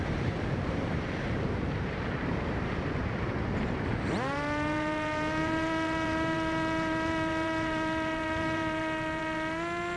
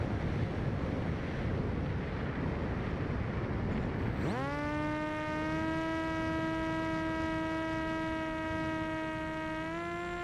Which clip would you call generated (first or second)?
first